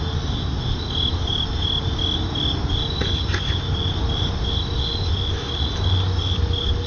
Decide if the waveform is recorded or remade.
recorded